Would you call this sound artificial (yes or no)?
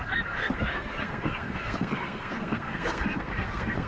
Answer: yes